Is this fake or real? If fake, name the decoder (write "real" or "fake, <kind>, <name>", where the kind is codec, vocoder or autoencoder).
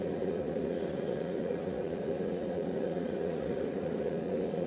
fake, vocoder, Vocos